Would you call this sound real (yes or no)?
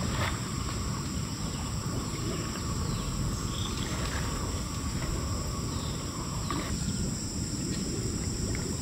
no